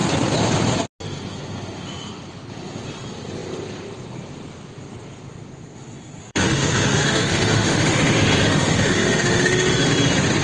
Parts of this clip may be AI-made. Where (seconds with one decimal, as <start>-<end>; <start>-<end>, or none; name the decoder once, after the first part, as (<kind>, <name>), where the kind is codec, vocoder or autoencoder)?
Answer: 6.2-9.9 (autoencoder, DAC-VAE)